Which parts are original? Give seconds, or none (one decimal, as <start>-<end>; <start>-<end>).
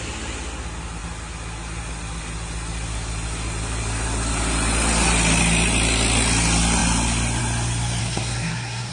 0.0-8.0